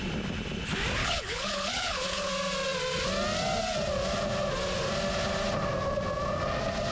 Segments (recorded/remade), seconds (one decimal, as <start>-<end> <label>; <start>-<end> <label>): 0.0-1.0 recorded; 1.0-2.3 remade; 2.3-6.9 recorded

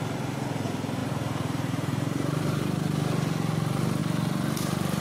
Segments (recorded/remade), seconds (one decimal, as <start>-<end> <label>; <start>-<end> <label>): 0.0-1.0 recorded; 1.0-2.6 remade; 2.6-5.0 recorded